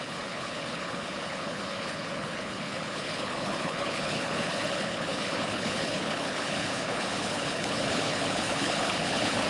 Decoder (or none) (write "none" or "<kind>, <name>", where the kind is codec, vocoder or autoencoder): codec, HILCodec